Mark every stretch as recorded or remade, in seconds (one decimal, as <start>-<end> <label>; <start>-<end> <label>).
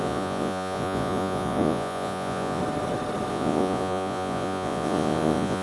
0.0-2.6 remade; 2.6-3.3 recorded; 3.3-5.6 remade